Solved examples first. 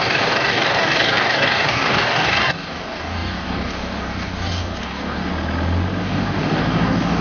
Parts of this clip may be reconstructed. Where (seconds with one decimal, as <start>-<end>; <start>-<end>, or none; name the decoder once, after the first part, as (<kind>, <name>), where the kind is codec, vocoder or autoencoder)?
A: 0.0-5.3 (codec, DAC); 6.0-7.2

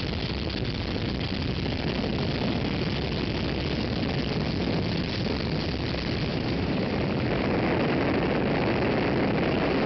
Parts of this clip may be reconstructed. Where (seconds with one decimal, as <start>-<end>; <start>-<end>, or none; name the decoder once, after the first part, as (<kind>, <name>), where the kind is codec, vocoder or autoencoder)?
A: 6.3-6.9 (vocoder, BigVGAN v2)

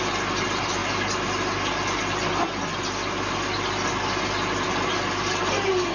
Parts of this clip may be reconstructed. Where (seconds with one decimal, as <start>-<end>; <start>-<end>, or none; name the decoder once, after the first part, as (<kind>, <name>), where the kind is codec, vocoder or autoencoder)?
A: none

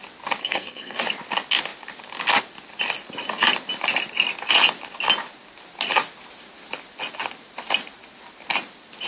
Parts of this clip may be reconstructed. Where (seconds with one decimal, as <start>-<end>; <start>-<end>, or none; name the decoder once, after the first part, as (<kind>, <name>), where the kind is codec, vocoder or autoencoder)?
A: 0.4-1.0 (codec, SNAC)

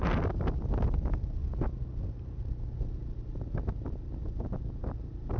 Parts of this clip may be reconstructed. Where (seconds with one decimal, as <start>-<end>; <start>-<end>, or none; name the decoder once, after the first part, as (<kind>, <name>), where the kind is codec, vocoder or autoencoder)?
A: none

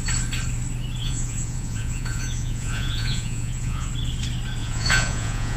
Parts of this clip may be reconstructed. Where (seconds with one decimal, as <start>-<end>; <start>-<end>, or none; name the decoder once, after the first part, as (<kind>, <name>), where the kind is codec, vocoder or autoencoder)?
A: 1.0-3.9 (vocoder, Vocos); 4.6-5.6